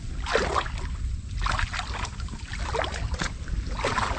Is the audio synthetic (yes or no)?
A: no